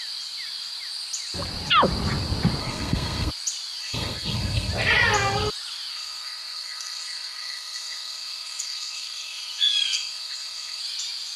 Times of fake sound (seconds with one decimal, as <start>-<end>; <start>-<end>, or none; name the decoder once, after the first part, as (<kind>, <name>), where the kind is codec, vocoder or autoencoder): 2.6-3.3 (codec, SNAC); 3.8-4.7; 5.9-10.8